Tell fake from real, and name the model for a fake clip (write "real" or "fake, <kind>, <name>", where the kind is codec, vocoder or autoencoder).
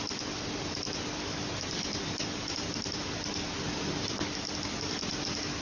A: real